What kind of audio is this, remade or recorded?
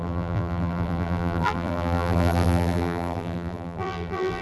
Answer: remade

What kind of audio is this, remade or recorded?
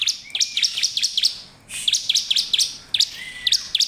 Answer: recorded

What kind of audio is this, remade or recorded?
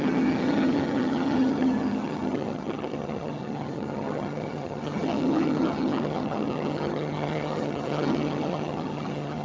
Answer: remade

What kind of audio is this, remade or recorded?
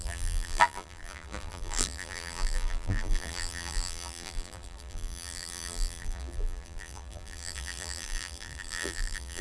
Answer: remade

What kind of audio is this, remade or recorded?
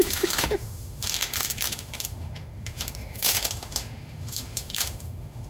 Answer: remade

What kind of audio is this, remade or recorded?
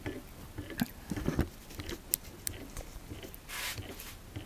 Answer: recorded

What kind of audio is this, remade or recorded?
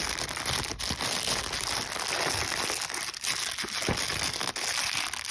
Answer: recorded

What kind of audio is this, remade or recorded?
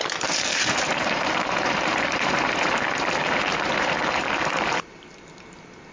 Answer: remade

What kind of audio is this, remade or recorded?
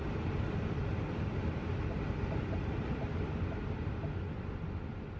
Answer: recorded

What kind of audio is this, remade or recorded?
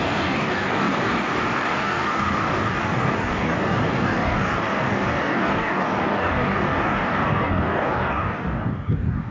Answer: remade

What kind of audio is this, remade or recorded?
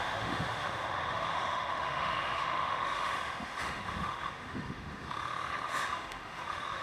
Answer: remade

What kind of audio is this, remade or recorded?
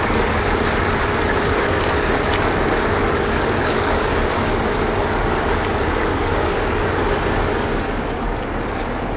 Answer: remade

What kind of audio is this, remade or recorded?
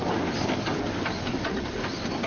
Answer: recorded